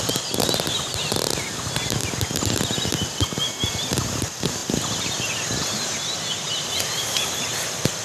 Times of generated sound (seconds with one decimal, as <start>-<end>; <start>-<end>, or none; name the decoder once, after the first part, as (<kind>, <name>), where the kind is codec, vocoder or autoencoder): none